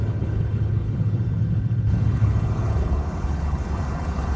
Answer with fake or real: fake